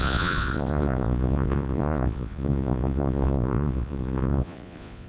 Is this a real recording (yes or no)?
no